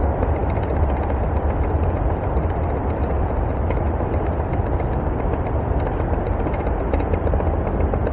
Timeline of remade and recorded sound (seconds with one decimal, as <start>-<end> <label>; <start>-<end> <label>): 0.0-8.1 recorded